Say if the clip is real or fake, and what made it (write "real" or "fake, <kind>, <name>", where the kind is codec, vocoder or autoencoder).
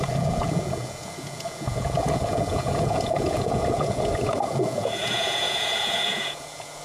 fake, vocoder, Vocos